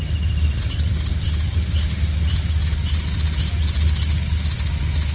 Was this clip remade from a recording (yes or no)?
no